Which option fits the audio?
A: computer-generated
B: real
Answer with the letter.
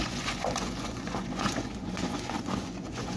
A